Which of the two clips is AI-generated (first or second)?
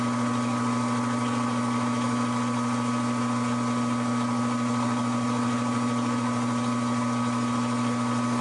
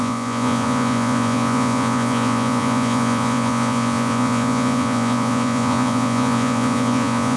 second